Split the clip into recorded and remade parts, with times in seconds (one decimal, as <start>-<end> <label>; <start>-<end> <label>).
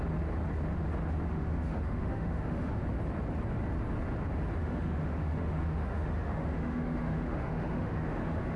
0.0-1.3 recorded; 1.3-2.8 remade; 2.8-4.6 recorded; 4.6-8.6 remade